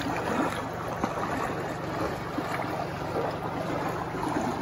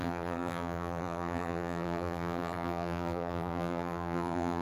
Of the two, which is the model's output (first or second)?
second